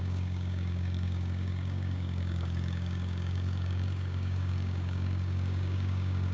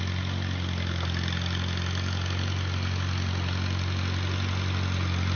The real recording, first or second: second